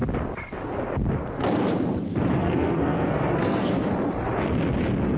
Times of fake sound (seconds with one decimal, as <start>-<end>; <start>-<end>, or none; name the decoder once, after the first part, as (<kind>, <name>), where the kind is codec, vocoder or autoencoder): 2.4-3.9 (codec, SNAC)